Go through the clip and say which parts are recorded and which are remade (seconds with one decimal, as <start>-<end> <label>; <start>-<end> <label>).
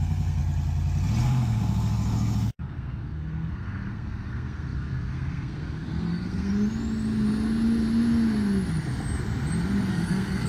0.0-0.4 remade; 0.4-1.2 recorded; 1.2-6.5 remade; 6.5-9.9 recorded; 9.9-10.5 remade